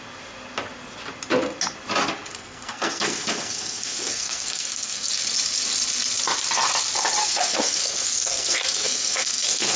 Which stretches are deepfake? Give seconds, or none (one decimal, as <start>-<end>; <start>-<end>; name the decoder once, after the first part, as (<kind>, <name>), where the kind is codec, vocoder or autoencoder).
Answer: 2.3-5.1 (codec, SNAC); 7.2-9.8